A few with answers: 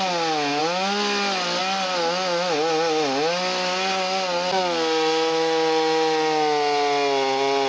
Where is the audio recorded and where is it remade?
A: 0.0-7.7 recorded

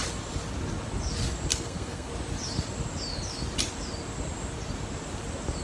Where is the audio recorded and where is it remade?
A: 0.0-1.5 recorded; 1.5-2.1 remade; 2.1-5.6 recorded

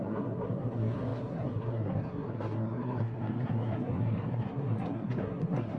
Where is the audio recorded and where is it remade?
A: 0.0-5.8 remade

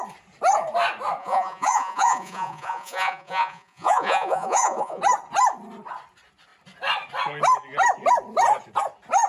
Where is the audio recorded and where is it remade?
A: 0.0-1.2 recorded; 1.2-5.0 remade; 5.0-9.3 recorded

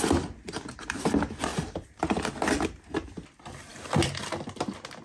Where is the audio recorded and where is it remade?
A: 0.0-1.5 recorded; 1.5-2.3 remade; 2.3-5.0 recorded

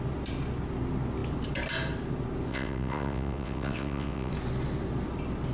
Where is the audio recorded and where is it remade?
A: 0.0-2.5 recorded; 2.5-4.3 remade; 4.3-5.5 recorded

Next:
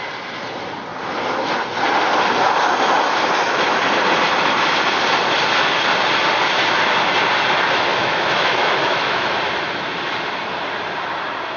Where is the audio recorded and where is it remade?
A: 0.0-7.9 recorded; 7.9-9.3 remade; 9.3-11.6 recorded